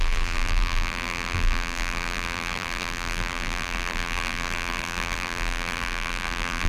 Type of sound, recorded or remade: remade